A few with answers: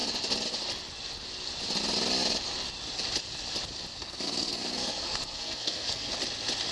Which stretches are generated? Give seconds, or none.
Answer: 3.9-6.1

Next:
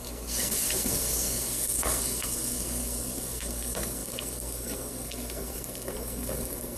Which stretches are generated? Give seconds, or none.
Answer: 0.0-6.8